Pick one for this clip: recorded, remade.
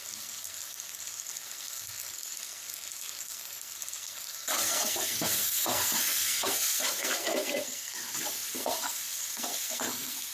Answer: remade